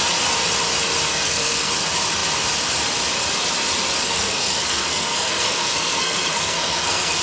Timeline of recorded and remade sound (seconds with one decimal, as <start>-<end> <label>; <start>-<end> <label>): 0.0-1.1 recorded; 1.1-1.7 remade; 1.7-4.0 recorded; 4.0-7.2 remade